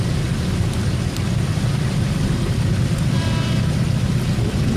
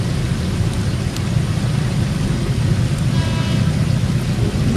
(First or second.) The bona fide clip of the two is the second